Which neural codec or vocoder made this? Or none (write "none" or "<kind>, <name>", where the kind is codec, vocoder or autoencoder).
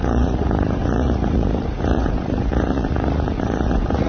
vocoder, Vocos